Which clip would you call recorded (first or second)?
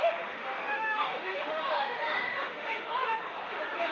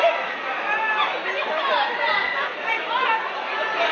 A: second